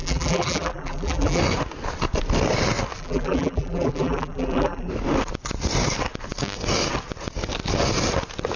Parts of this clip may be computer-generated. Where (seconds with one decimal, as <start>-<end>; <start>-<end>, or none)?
0.0-1.4; 3.0-4.9